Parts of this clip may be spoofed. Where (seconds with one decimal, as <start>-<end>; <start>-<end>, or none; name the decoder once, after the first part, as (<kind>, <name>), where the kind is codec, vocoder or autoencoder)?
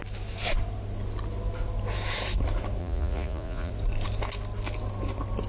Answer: 2.8-3.7 (vocoder, Vocos)